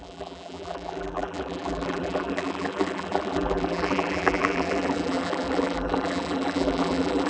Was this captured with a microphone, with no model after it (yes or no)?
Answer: no